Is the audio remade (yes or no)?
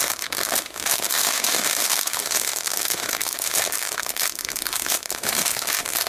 yes